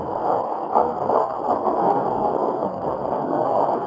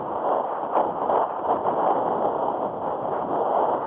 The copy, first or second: first